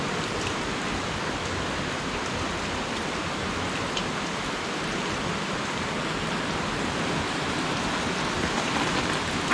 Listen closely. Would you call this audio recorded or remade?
recorded